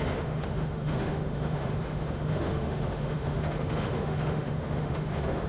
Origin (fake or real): fake